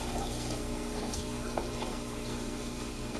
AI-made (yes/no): yes